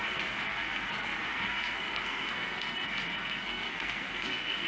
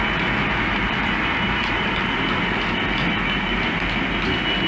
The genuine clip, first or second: second